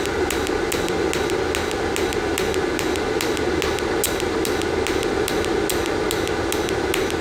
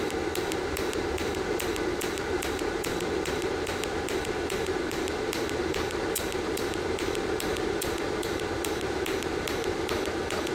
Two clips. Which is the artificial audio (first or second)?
second